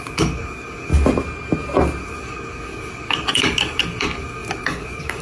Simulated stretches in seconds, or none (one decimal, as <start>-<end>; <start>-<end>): 0.0-0.9; 2.0-5.2